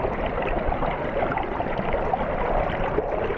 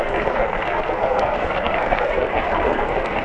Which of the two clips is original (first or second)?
first